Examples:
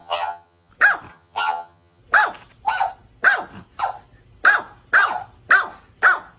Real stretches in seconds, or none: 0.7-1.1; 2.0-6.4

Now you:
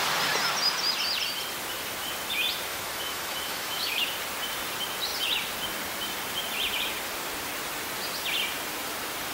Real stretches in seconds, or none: 0.0-2.7; 4.1-9.3

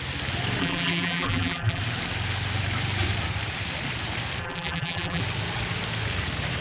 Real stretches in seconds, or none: 0.0-0.6; 1.8-4.4; 5.2-6.6